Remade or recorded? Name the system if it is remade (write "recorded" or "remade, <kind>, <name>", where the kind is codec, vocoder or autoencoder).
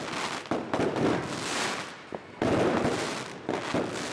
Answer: recorded